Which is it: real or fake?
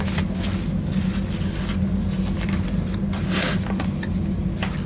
real